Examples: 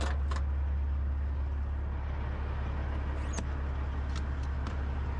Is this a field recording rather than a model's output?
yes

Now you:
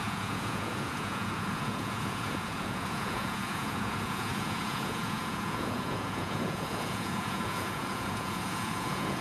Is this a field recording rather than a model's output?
no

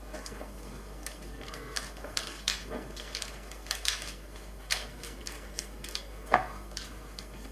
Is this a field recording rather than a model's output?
no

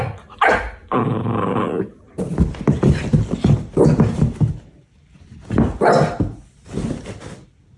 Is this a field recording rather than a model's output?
yes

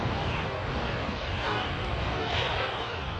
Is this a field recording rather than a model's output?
no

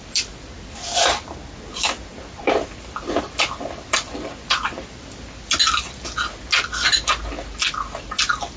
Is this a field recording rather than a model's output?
yes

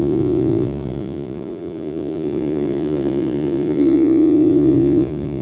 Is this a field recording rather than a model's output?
no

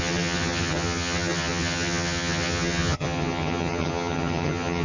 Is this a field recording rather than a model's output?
no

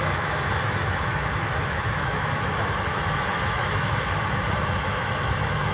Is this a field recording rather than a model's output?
no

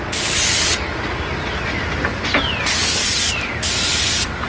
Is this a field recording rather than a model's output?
yes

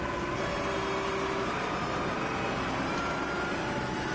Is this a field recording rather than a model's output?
yes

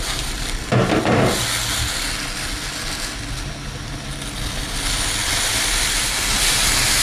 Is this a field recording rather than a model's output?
yes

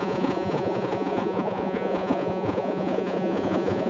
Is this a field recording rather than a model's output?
no